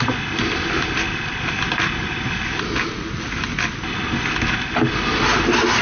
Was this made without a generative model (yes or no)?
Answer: yes